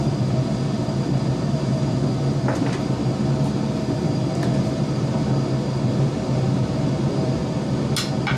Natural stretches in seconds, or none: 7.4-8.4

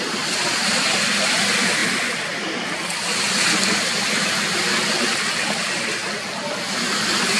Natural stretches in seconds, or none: 1.8-5.5; 6.0-7.4